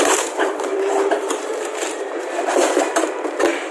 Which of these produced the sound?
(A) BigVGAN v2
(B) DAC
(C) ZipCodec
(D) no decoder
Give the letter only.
A